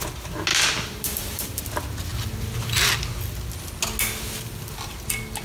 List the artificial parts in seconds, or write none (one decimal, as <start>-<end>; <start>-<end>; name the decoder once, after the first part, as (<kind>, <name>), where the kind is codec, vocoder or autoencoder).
0.5-1.6 (vocoder, BigVGAN v2)